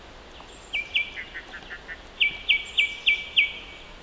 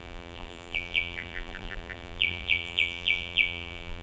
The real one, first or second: first